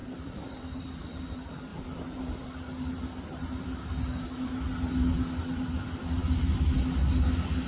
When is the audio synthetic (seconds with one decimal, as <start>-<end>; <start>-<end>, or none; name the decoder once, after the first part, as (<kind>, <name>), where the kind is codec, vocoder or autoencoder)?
0.0-0.8 (vocoder, BigVGAN v2)